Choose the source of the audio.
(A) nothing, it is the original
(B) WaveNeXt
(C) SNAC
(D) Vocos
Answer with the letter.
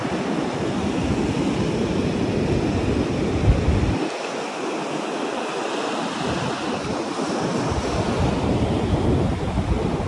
A